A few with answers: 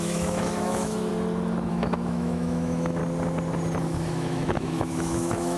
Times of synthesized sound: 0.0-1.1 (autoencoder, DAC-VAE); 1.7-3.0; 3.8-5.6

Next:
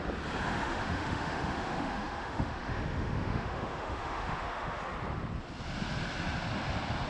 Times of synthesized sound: 0.5-4.8 (autoencoder, DAC-VAE)